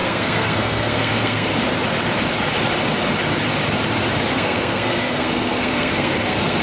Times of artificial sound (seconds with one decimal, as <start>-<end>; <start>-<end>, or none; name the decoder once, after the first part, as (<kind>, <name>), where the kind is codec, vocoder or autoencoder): 0.0-1.5 (codec, SNAC); 4.3-6.6